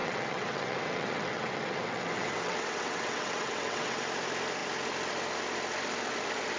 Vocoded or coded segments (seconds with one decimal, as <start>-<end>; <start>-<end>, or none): 0.0-4.0

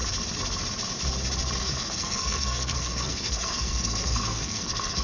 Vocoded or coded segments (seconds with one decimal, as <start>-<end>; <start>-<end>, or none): 1.6-5.0

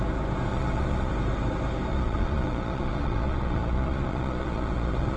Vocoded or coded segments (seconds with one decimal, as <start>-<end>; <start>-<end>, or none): 0.5-1.1; 1.9-5.2

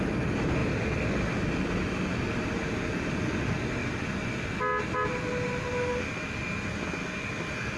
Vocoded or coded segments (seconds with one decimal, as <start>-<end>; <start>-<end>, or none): 0.6-2.6